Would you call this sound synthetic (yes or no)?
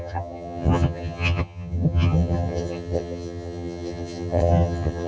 yes